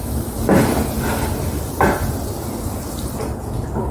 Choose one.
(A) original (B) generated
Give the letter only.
A